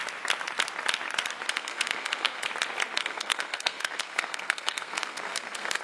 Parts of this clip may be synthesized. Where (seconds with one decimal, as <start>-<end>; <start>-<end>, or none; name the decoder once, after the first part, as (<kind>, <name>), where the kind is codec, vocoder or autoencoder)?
1.5-2.5 (codec, SNAC); 3.0-5.8